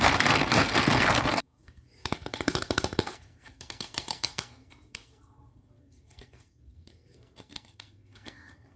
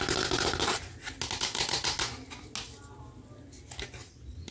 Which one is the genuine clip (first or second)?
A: second